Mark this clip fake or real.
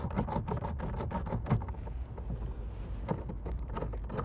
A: real